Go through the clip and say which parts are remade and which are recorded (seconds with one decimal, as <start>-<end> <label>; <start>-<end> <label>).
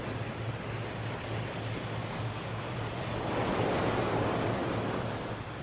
0.0-2.0 recorded; 2.0-2.6 remade; 2.6-5.6 recorded